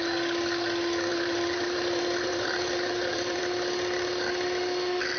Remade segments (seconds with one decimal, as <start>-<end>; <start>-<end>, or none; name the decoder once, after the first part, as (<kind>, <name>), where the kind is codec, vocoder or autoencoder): 1.1-3.4 (vocoder, BigVGAN v2)